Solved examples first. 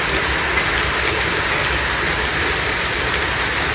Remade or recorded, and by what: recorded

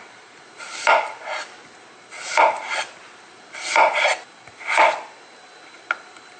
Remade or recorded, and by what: recorded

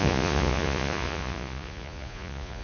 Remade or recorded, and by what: remade, vocoder, Vocos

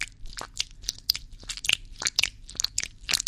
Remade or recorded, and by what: recorded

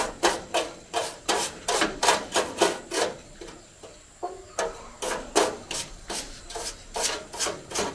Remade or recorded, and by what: recorded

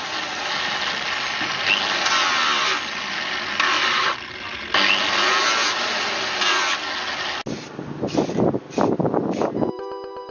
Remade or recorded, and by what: recorded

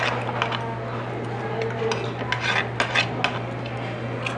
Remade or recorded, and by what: recorded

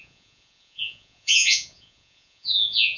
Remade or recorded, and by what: remade, vocoder, Vocos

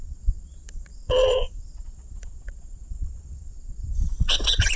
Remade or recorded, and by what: remade, vocoder, Vocos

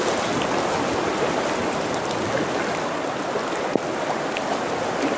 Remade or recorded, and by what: recorded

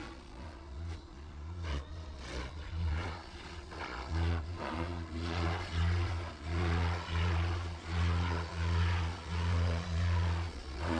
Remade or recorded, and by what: remade, vocoder, Vocos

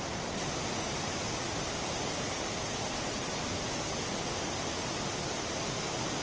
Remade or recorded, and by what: recorded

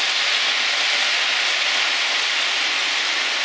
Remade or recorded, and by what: recorded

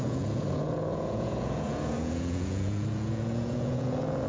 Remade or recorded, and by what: remade, vocoder, Vocos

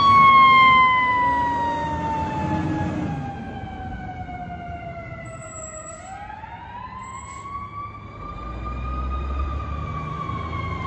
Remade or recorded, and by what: recorded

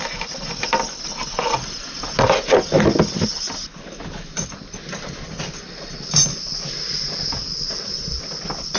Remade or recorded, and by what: recorded